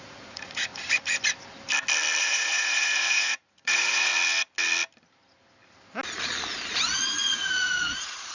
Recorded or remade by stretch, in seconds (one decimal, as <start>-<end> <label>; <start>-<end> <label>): 0.0-0.7 remade; 0.7-2.2 recorded; 2.2-4.1 remade; 4.1-6.7 recorded; 6.7-8.3 remade